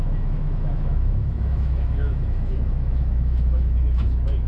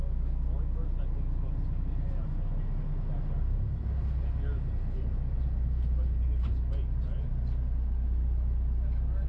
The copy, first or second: first